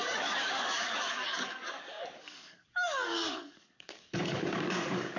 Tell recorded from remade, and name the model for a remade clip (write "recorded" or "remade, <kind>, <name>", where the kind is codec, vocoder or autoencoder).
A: remade, codec, DAC